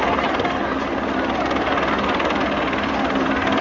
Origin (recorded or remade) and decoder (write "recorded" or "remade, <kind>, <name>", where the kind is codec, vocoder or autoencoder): recorded